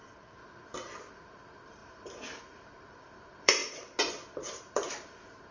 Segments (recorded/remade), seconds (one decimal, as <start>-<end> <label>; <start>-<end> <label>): 0.0-0.4 remade; 0.4-1.1 recorded; 1.1-3.6 remade; 3.6-4.5 recorded; 4.5-5.5 remade